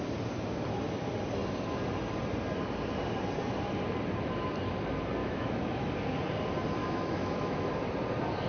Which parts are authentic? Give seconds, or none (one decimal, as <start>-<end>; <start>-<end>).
0.0-5.2; 5.8-6.8; 7.7-8.5